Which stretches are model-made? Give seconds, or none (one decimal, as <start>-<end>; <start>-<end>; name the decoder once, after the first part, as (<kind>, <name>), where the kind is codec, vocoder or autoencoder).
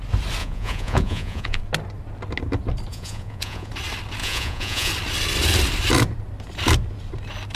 0.4-1.6 (vocoder, Vocos); 2.9-3.7; 4.2-4.9